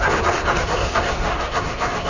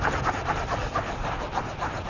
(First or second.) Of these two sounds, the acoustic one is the second